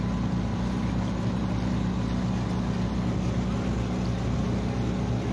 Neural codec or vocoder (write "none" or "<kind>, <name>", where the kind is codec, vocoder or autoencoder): none